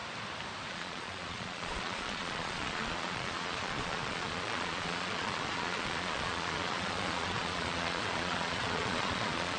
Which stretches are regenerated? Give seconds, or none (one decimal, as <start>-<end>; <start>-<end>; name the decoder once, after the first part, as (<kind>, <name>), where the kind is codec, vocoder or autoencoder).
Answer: 0.7-9.6 (vocoder, Vocos)